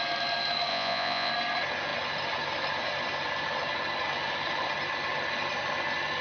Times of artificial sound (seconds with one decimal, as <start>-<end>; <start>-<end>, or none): 0.7-1.3